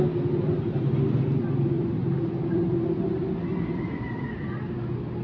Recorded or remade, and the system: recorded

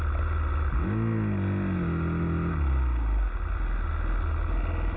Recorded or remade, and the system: recorded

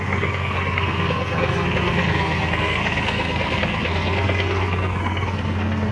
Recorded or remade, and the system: remade, codec, SNAC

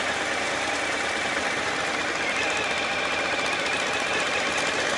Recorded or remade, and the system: recorded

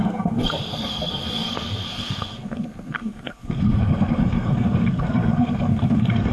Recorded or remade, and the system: remade, codec, SNAC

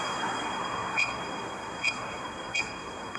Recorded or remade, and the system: remade, codec, SNAC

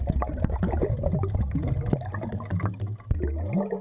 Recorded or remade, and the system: recorded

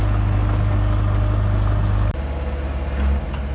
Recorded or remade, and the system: recorded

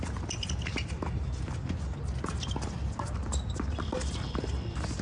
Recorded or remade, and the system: recorded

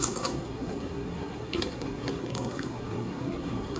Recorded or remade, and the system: remade, codec, SNAC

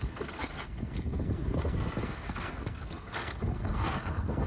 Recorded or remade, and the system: remade, codec, SNAC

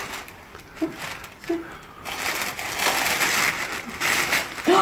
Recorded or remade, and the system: recorded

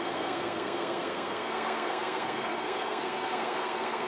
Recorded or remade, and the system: remade, codec, SNAC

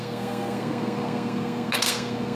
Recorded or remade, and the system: remade, codec, SNAC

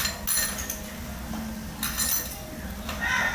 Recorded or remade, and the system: recorded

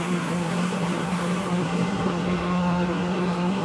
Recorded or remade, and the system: remade, codec, SNAC